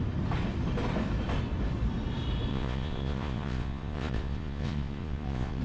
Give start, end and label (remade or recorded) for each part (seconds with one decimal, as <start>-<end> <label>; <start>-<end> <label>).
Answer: 0.0-2.5 recorded; 2.5-5.6 remade